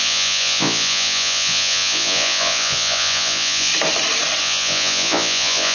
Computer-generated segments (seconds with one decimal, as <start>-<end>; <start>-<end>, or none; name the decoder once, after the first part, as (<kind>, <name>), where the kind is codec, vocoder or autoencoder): 0.0-3.7 (vocoder, Vocos); 4.4-5.7